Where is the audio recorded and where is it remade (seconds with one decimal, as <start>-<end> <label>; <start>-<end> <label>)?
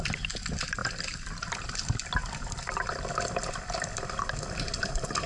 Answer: 0.0-5.3 recorded